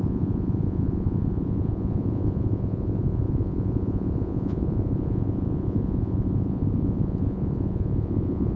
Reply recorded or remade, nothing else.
remade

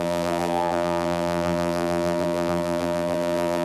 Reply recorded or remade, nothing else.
remade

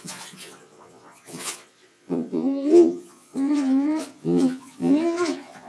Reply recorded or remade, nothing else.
remade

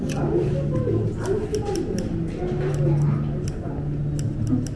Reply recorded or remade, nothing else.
recorded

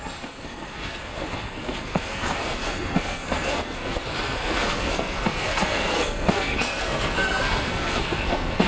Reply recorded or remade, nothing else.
remade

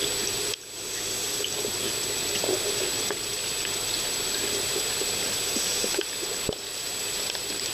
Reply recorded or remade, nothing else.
recorded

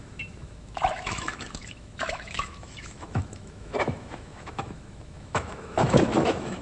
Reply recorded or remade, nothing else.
remade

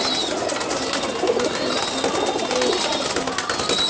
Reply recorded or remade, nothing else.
recorded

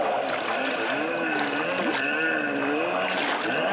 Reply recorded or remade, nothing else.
recorded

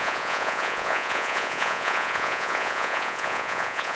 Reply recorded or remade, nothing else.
remade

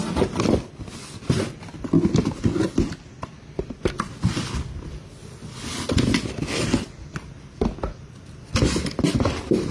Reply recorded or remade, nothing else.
recorded